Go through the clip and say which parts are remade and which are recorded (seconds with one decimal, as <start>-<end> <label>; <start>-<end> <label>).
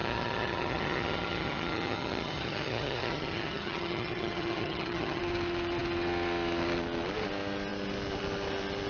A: 0.0-5.2 remade; 5.2-8.9 recorded